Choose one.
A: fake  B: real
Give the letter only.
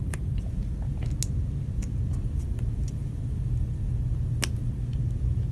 B